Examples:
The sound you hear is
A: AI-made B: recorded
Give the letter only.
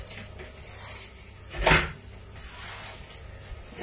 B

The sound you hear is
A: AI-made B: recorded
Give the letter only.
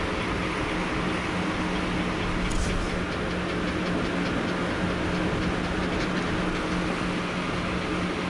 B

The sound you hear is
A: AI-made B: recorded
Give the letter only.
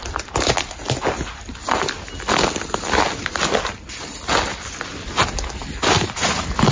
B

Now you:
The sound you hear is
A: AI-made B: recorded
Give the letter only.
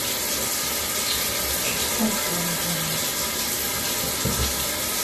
B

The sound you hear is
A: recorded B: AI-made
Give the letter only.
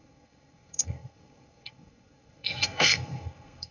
B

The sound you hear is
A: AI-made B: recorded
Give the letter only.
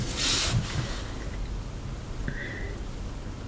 B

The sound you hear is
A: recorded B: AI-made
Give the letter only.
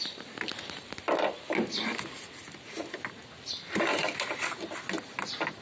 A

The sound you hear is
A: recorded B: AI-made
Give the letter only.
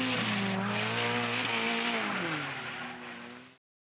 A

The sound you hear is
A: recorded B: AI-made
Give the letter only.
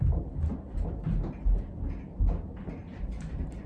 A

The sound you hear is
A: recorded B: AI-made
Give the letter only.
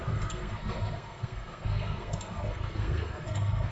B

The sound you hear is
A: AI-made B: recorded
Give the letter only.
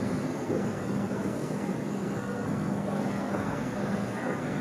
A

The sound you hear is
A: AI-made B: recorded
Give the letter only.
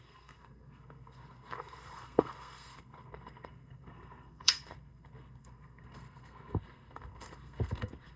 A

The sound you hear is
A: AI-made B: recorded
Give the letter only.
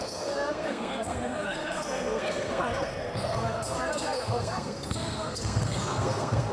A